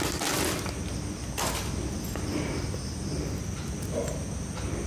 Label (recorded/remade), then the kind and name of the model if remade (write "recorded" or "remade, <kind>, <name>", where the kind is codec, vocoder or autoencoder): recorded